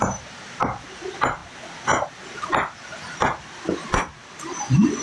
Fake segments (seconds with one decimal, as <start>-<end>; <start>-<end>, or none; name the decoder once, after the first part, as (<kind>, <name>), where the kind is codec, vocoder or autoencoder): none